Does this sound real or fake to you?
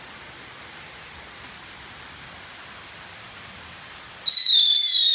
real